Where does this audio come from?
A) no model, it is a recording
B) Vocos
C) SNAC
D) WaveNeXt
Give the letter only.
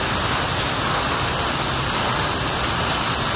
A